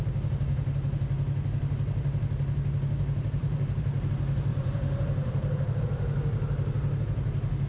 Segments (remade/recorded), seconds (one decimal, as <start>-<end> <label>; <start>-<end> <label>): 0.0-3.4 recorded; 3.4-4.1 remade; 4.1-4.5 recorded; 4.5-5.8 remade; 5.8-7.7 recorded